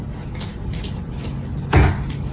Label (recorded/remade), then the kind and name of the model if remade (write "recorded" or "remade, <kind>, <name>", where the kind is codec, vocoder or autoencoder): recorded